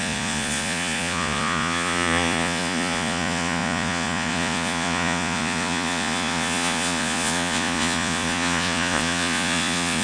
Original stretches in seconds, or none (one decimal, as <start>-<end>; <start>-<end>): none